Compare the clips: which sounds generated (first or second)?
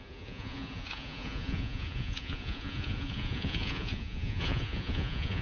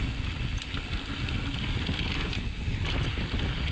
first